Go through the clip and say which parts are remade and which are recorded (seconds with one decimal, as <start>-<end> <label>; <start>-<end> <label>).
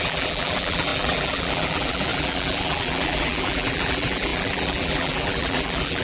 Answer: 0.0-6.0 remade